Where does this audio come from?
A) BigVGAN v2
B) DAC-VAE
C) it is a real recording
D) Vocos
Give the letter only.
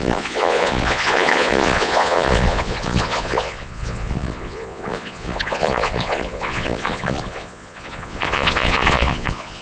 D